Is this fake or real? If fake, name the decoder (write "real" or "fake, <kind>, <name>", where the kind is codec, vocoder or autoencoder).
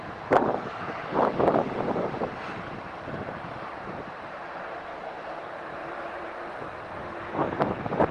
fake, vocoder, BigVGAN v2